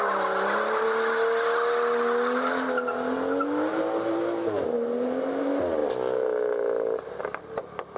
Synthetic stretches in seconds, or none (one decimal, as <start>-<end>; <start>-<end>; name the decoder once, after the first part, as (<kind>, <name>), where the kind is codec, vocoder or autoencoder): none

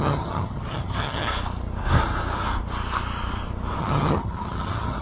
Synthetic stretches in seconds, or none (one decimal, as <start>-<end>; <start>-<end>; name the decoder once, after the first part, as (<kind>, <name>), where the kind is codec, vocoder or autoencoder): 0.0-1.3 (vocoder, HiFi-GAN); 3.8-5.0

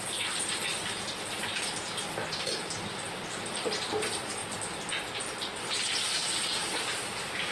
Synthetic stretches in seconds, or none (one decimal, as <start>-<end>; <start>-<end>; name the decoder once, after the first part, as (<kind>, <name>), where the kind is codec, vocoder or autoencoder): none

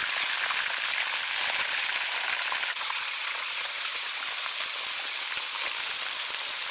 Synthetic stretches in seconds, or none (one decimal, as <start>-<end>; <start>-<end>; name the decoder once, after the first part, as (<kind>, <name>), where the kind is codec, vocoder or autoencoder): 2.7-4.2 (vocoder, Vocos)

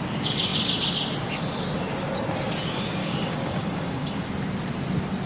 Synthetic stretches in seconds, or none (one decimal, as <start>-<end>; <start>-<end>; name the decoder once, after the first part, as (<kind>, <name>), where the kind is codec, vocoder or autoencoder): 3.0-4.3 (codec, DAC)

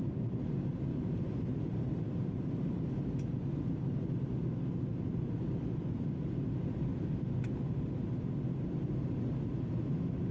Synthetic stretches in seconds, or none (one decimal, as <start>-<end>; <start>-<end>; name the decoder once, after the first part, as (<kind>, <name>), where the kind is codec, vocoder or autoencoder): 0.9-3.2 (vocoder, BigVGAN v2)

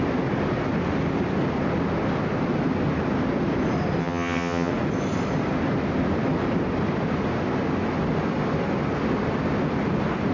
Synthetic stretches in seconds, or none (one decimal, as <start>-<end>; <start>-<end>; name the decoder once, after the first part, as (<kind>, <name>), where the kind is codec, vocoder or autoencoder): 4.0-4.7 (vocoder, HiFi-GAN)

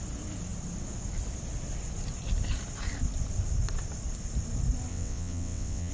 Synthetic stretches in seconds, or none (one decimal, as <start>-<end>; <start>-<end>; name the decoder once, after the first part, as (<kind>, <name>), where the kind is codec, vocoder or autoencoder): 4.9-5.9 (vocoder, WaveNeXt)